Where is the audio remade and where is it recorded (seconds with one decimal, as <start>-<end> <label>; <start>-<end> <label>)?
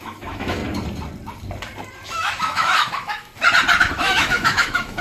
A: 0.0-0.6 remade; 0.6-2.1 recorded; 2.1-3.3 remade; 3.3-3.8 recorded; 3.8-5.0 remade